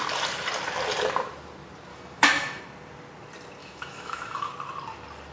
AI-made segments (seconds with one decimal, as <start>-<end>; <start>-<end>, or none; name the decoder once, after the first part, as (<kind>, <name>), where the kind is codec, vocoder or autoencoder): 1.9-2.6 (autoencoder, DAC-VAE); 3.6-4.5